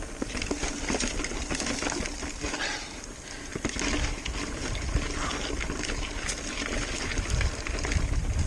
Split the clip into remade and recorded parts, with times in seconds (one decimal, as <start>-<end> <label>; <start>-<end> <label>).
0.0-8.5 recorded